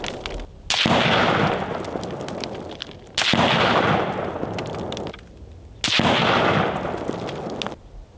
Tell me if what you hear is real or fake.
real